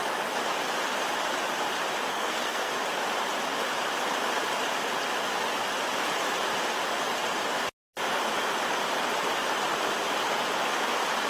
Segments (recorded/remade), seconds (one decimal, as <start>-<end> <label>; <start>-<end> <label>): 0.0-2.1 recorded; 2.1-2.7 remade; 2.7-11.3 recorded